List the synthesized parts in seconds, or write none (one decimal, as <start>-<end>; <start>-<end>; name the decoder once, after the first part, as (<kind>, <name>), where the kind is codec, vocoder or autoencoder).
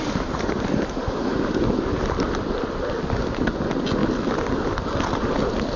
none